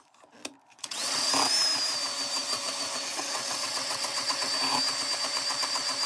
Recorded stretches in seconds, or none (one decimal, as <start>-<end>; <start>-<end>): 0.0-0.7; 1.3-3.1; 4.5-6.1

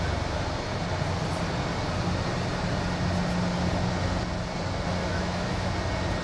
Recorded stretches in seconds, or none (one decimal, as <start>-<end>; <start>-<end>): 0.0-5.1; 5.7-6.2